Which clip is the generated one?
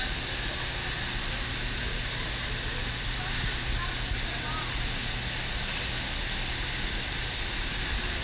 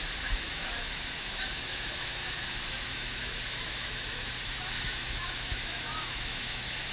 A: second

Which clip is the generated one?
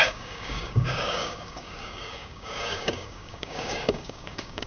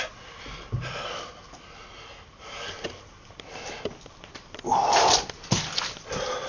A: first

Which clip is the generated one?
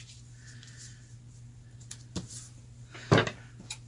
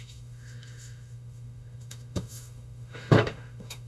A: second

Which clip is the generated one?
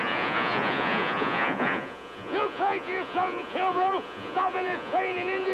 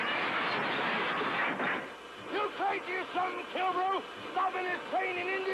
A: first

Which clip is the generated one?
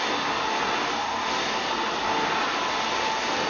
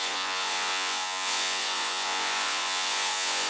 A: second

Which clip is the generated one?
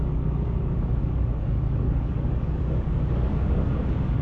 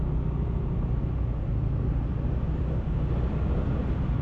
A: first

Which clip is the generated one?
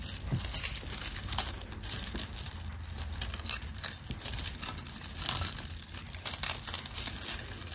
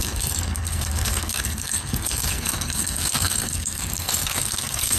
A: second